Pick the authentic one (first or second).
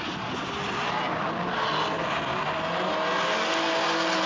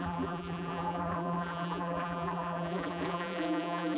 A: first